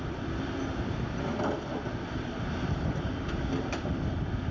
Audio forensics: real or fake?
real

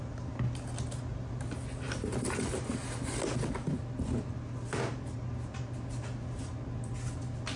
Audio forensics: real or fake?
real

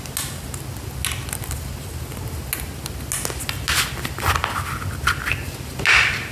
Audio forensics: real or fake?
real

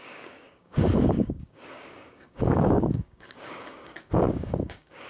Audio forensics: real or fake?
fake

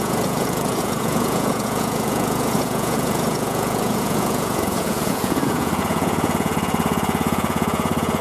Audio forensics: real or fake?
fake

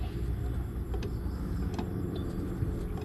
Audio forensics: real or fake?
real